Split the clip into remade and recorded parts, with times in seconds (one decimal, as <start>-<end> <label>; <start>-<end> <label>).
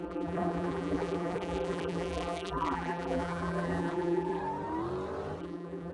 0.0-4.4 remade; 4.4-5.4 recorded; 5.4-5.9 remade